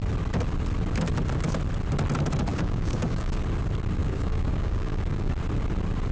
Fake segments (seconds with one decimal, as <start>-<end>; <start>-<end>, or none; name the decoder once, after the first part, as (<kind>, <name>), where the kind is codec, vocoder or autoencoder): 2.5-3.4 (codec, DAC); 4.0-5.3